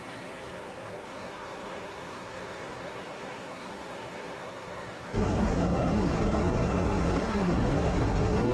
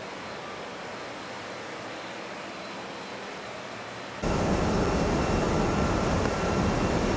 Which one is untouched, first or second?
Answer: second